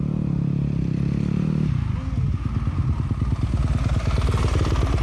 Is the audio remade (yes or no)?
no